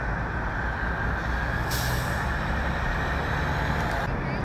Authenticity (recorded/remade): recorded